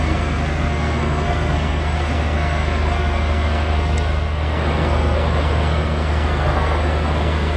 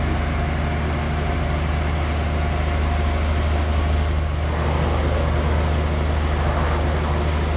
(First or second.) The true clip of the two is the second